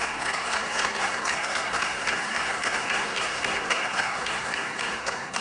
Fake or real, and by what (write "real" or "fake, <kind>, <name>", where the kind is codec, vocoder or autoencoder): fake, codec, SNAC